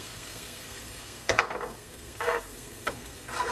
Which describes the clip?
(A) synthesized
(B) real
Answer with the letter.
A